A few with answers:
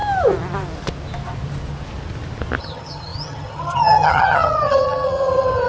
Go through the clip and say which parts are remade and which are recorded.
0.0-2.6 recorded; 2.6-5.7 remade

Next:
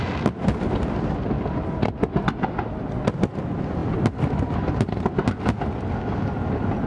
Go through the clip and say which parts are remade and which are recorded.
0.0-6.9 recorded

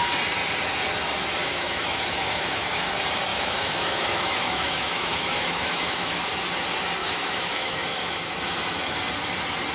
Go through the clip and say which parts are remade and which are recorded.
0.0-1.4 recorded; 1.4-2.9 remade; 2.9-3.3 recorded; 3.3-6.2 remade; 6.2-7.0 recorded; 7.0-8.9 remade; 8.9-9.7 recorded

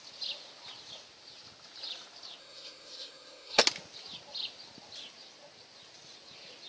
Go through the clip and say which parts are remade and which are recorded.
0.0-2.4 recorded; 2.4-3.6 remade; 3.6-6.7 recorded

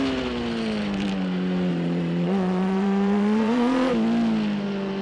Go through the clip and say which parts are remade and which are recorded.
0.0-1.7 recorded; 1.7-3.9 remade; 3.9-5.0 recorded

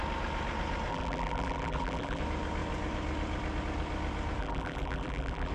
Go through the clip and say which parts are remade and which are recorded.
0.0-0.9 recorded; 0.9-2.2 remade; 2.2-4.4 recorded; 4.4-5.5 remade

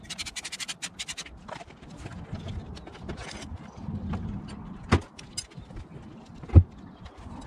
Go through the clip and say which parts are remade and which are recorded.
0.0-7.5 recorded

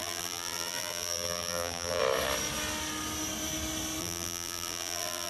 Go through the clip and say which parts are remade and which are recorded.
0.0-2.0 remade; 2.0-4.0 recorded; 4.0-5.3 remade